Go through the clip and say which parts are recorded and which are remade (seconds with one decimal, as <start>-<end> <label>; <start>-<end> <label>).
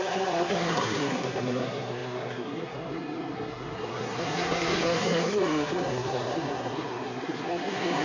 0.0-8.0 remade